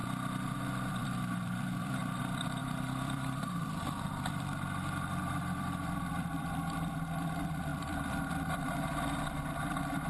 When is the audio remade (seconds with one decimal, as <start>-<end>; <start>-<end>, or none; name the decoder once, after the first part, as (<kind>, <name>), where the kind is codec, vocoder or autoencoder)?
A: 0.9-10.1 (vocoder, BigVGAN v2)